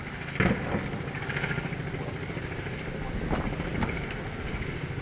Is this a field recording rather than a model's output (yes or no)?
yes